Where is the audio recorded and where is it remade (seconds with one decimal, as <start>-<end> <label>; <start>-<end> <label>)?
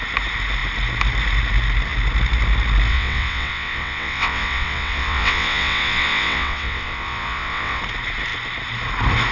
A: 0.0-2.9 recorded; 2.9-7.8 remade; 7.8-9.3 recorded